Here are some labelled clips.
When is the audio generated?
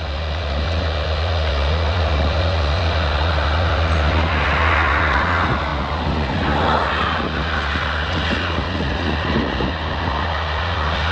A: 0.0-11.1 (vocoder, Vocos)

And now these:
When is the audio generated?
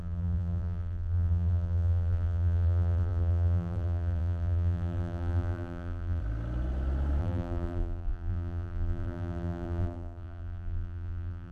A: 0.0-6.2 (vocoder, BigVGAN v2); 7.2-11.5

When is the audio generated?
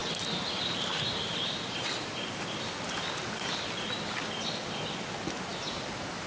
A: none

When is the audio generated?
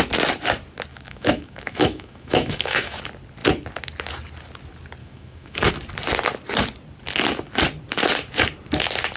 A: 0.9-3.0 (autoencoder, DAC-VAE); 5.0-5.7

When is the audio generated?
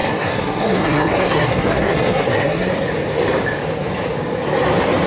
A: 0.0-2.7 (codec, SNAC)